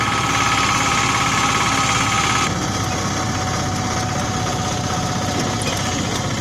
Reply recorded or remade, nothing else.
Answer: recorded